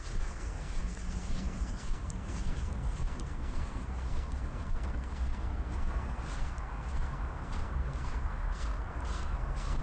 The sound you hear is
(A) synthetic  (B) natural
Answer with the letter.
A